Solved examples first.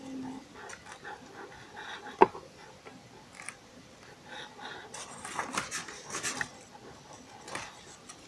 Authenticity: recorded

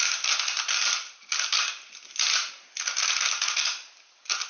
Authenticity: recorded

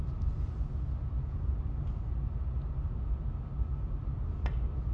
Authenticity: recorded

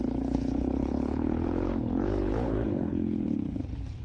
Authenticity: remade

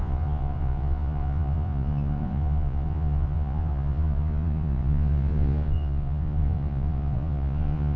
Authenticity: remade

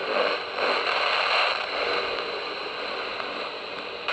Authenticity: recorded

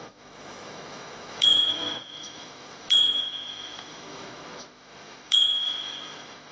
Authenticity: remade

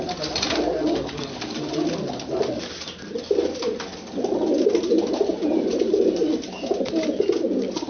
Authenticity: recorded